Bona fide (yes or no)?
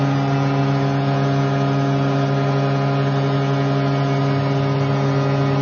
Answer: yes